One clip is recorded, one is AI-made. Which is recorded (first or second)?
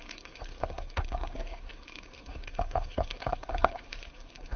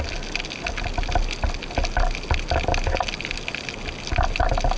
second